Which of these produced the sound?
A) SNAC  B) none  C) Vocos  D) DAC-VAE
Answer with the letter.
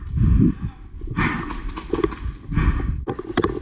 B